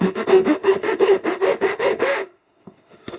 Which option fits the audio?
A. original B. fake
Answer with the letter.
B